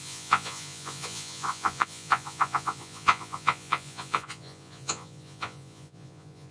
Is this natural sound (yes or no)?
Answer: no